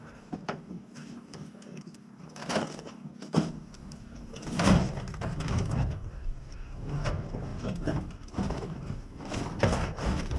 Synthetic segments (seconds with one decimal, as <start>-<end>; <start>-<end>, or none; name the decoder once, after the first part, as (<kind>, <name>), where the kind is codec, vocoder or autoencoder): 0.0-10.4 (codec, DAC)